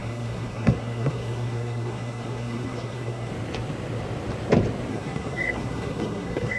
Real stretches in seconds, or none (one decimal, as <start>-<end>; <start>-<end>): 3.3-4.9